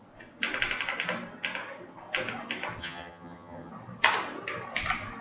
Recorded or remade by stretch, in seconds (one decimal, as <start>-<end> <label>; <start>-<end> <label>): 0.0-2.8 recorded; 2.8-3.7 remade; 3.7-5.2 recorded